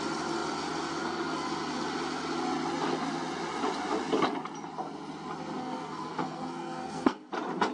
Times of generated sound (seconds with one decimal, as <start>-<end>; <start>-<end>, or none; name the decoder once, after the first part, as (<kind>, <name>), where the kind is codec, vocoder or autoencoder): 5.6-7.3 (codec, SNAC)